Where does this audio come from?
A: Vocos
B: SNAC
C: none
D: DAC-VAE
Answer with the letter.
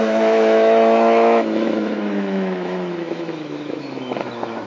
D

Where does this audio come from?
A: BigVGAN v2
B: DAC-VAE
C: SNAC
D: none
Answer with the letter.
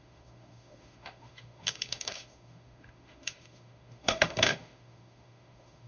B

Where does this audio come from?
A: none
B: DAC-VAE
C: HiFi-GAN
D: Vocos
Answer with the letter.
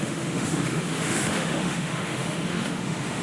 B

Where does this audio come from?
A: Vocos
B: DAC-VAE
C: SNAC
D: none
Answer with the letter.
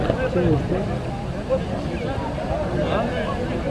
D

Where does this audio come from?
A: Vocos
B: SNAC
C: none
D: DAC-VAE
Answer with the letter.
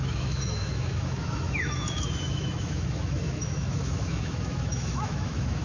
D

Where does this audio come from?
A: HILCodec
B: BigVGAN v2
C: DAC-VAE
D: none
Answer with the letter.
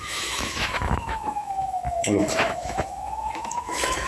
C